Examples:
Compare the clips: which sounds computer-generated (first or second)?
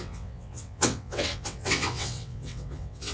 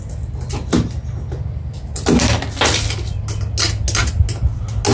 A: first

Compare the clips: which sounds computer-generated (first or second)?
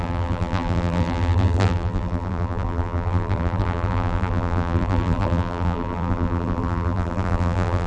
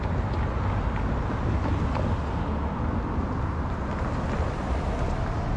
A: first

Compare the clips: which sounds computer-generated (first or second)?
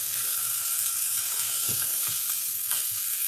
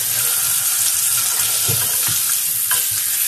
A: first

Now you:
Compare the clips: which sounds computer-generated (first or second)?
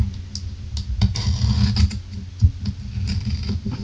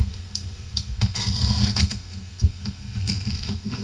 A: second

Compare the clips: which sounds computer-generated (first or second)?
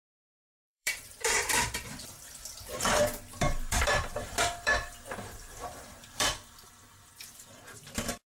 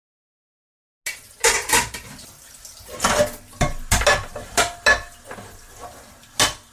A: first